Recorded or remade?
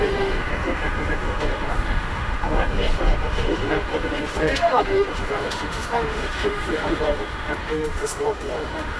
remade